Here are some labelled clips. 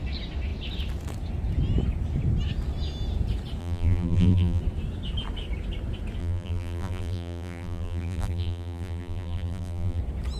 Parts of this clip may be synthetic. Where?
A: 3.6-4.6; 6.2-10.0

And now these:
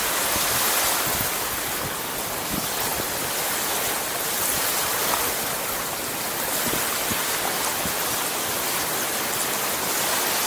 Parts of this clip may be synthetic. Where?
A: none

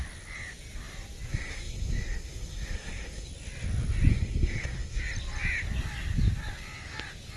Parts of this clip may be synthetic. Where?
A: 1.3-3.3; 4.1-5.0

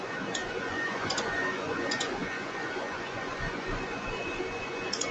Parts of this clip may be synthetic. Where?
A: 0.0-5.1

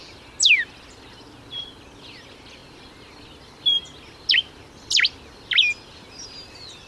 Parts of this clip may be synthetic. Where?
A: none

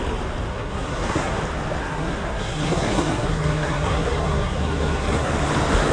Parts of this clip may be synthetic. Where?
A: 0.5-1.4; 1.8-5.3

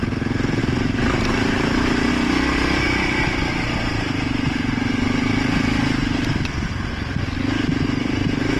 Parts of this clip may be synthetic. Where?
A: 0.6-2.1